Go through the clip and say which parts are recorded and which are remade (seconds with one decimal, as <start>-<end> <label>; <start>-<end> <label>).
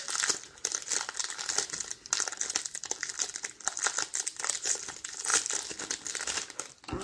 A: 0.0-7.0 recorded